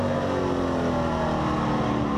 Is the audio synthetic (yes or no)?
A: no